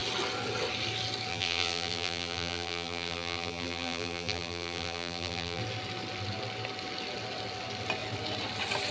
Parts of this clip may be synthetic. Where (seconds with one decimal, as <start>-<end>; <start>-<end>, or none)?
1.3-5.6

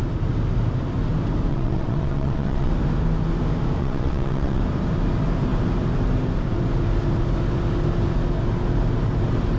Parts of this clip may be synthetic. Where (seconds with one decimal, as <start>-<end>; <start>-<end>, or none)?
1.5-2.7; 3.8-4.6

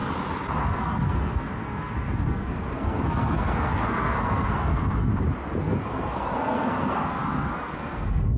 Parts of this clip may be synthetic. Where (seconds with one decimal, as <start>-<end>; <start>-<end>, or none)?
0.6-5.1; 5.6-8.4

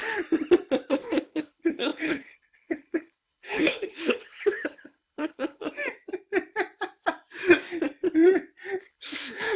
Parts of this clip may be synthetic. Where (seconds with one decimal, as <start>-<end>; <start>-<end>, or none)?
0.9-5.6; 8.8-9.6